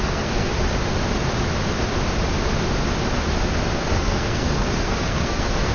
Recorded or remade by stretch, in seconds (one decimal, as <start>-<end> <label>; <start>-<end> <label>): 0.0-0.5 remade; 0.5-3.7 recorded; 3.7-5.7 remade